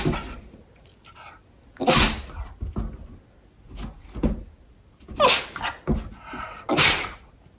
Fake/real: real